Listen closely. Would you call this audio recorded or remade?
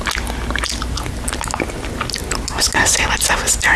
recorded